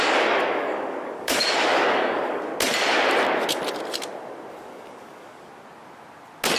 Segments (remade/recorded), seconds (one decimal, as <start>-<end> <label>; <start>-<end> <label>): 0.0-2.5 remade; 2.5-4.5 recorded; 4.5-5.5 remade; 5.5-6.6 recorded